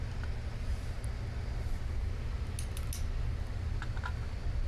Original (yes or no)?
yes